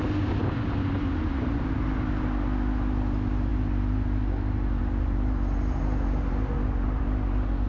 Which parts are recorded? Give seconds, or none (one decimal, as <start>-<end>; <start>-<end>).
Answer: 0.0-0.4; 1.1-7.7